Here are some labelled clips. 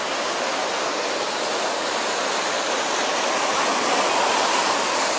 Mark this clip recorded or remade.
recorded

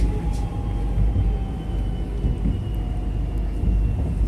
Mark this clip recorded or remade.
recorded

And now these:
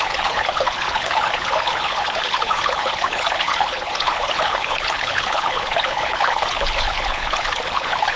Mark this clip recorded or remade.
remade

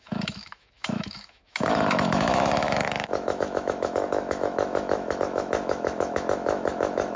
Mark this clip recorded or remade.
remade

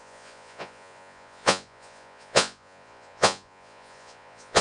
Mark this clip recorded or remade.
remade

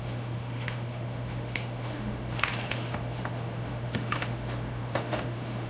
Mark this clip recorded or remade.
remade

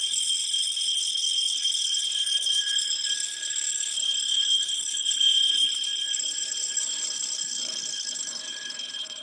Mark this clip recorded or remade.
remade